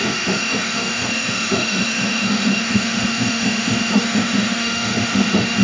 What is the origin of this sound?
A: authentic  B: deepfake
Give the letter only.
B